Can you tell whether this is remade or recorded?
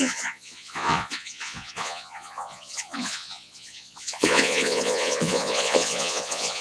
remade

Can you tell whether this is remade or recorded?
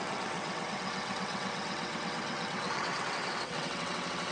remade